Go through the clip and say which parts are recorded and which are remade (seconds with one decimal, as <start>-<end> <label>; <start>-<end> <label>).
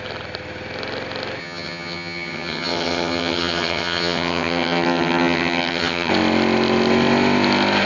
0.0-1.4 recorded; 1.4-6.1 remade; 6.1-7.9 recorded